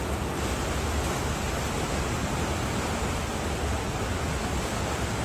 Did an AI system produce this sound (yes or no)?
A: no